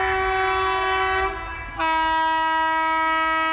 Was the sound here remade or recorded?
recorded